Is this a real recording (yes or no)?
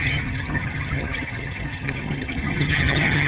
no